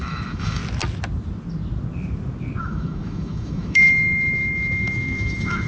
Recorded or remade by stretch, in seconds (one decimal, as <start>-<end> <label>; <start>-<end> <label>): 0.0-0.6 remade; 0.6-2.6 recorded; 2.6-5.7 remade